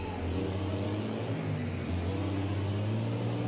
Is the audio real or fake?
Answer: real